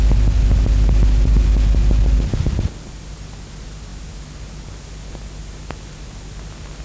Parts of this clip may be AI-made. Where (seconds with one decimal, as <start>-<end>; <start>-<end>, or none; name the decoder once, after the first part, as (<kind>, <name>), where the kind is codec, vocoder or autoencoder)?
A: none